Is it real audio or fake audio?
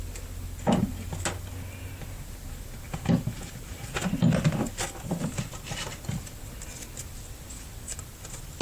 real